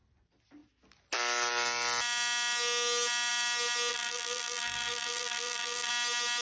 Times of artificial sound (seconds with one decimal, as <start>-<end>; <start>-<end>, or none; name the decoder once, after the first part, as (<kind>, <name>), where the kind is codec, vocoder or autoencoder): 3.9-5.9 (vocoder, BigVGAN v2)